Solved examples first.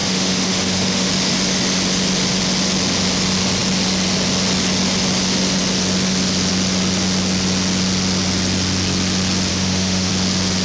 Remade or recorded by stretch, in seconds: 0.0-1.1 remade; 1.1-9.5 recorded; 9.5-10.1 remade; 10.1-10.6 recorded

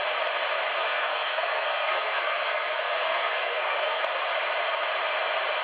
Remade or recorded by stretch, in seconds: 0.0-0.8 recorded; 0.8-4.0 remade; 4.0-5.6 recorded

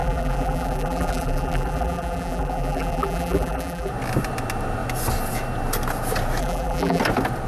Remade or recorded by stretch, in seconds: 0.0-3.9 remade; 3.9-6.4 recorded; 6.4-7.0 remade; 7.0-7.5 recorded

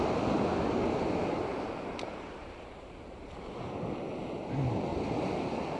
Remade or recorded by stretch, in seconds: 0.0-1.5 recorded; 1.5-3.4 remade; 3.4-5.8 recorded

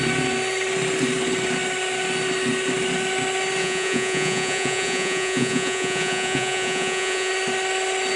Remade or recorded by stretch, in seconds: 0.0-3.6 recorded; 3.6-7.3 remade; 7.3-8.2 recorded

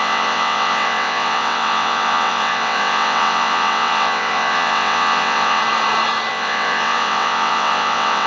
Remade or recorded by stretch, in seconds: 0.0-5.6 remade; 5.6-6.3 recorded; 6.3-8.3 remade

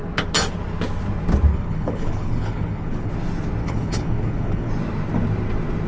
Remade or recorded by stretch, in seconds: 0.0-1.5 recorded; 1.5-3.1 remade; 3.1-3.6 recorded; 3.6-4.7 remade; 4.7-5.9 recorded

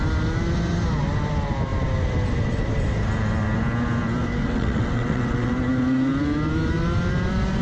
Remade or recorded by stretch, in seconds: 0.0-4.4 recorded; 4.4-5.5 remade; 5.5-7.6 recorded